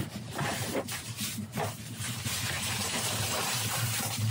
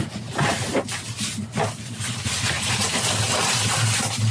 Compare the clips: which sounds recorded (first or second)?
second